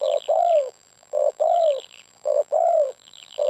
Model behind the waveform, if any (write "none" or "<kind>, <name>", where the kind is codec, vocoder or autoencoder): vocoder, BigVGAN v2